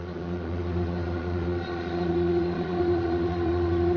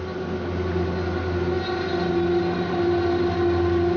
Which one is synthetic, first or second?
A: first